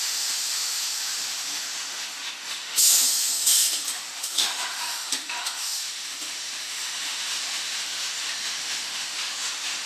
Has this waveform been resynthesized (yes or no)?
yes